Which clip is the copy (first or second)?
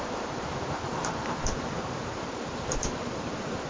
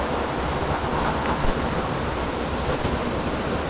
first